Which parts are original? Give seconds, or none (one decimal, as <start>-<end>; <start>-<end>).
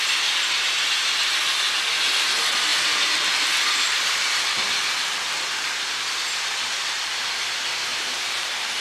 0.0-2.7; 4.5-7.9